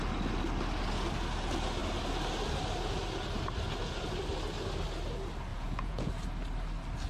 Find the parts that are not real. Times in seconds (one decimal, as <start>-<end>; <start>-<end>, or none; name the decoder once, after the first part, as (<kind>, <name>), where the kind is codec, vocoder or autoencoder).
5.5-6.1 (vocoder, Vocos)